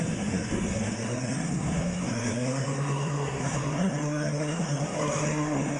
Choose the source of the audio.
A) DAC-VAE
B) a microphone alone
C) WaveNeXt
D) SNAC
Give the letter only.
D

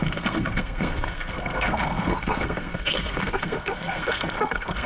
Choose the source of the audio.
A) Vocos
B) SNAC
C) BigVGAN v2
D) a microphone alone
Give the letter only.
B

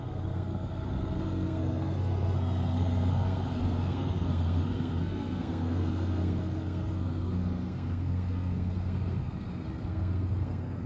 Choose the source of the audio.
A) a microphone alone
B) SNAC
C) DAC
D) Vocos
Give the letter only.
B